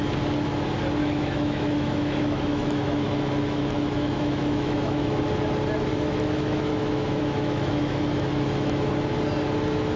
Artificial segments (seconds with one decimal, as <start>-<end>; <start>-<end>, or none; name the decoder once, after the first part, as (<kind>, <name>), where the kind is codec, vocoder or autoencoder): 1.0-5.2 (autoencoder, DAC-VAE); 5.9-8.9